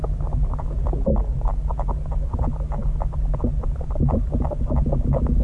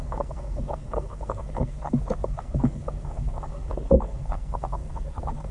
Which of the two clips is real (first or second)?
first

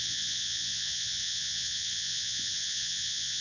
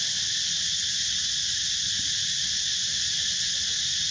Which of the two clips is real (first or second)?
second